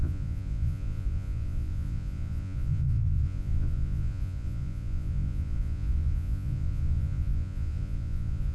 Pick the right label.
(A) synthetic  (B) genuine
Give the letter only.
A